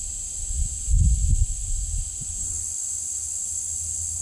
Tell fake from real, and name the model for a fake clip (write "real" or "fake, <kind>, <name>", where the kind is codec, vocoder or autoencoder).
real